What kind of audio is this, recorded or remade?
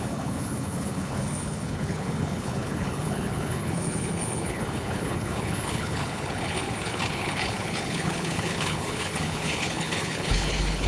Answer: remade